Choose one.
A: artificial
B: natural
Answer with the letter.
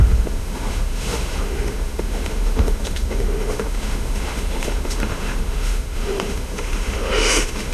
A